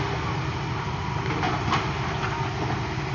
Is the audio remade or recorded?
recorded